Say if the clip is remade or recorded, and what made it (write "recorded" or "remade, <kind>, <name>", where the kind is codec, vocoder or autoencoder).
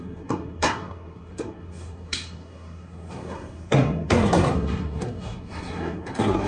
remade, codec, SNAC